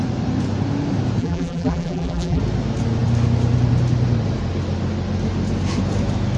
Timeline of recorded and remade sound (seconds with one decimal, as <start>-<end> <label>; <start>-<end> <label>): 0.0-1.2 recorded; 1.2-2.4 remade; 2.4-6.4 recorded